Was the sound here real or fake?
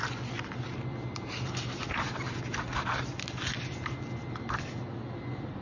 real